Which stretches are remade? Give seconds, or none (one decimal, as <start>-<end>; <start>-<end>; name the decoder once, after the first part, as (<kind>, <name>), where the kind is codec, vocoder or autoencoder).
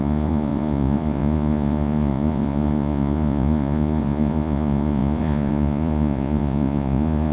0.0-7.3 (vocoder, Vocos)